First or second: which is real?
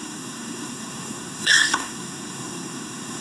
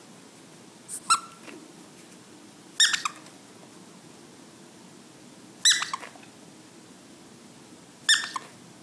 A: second